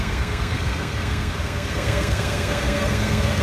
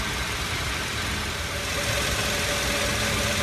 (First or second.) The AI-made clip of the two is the first